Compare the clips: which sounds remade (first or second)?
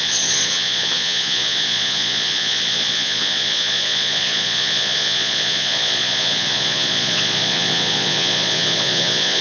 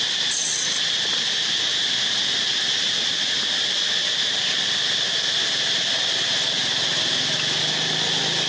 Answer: first